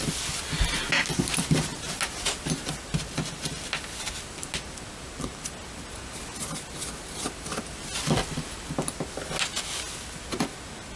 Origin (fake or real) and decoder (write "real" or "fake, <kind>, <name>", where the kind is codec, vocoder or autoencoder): real